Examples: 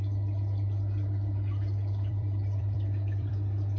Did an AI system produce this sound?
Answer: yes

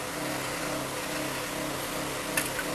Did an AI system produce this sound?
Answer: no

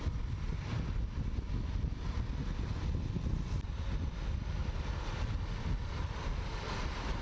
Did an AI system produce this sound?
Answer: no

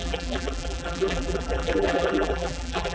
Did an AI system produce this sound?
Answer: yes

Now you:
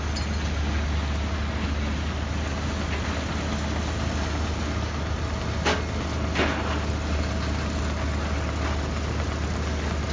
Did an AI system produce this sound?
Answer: no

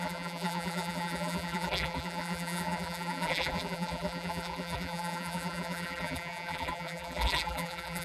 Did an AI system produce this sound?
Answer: yes